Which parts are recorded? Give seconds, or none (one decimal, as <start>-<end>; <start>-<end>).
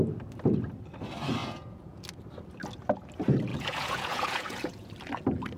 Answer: 0.0-1.4; 2.0-3.5; 4.9-5.6